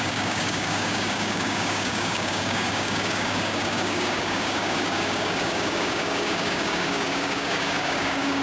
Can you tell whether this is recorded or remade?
remade